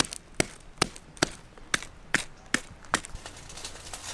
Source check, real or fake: real